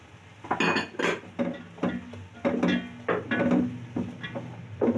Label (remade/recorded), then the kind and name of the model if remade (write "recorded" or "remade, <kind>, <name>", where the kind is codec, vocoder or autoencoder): recorded